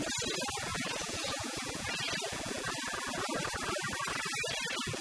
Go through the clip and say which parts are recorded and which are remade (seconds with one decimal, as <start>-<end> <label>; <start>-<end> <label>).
0.0-0.7 recorded; 0.7-2.1 remade; 2.1-5.0 recorded